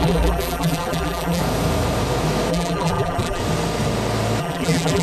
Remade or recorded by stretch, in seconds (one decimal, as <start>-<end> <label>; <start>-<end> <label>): 0.0-1.4 remade; 1.4-2.5 recorded; 2.5-3.4 remade; 3.4-4.4 recorded; 4.4-5.0 remade